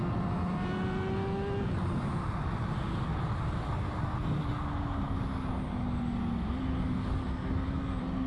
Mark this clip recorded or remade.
recorded